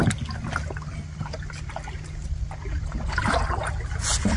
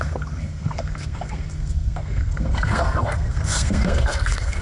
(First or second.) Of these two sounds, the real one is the first